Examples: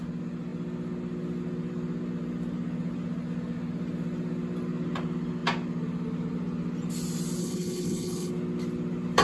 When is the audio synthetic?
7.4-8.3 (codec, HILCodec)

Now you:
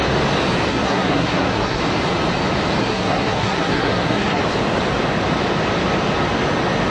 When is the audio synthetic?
0.7-1.8 (codec, SNAC); 2.8-4.4

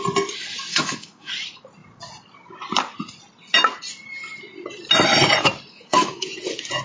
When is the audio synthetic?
0.7-1.3 (autoencoder, DAC-VAE); 5.7-6.3

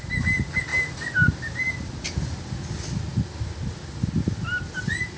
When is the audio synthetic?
none

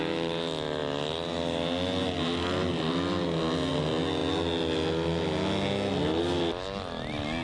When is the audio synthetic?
none